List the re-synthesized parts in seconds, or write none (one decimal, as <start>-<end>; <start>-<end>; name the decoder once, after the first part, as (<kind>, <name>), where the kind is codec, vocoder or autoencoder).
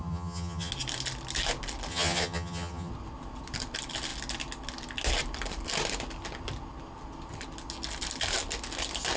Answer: 0.0-0.7 (vocoder, HiFi-GAN); 1.9-2.9